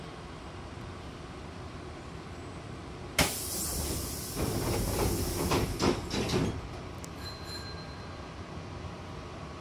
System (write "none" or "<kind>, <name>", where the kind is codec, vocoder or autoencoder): vocoder, BigVGAN v2